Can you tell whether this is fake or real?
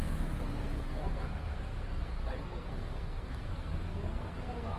fake